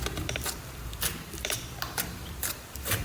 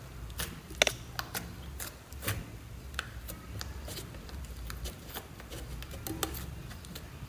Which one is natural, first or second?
second